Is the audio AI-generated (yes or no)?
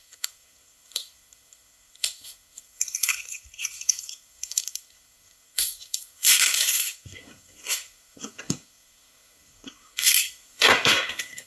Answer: yes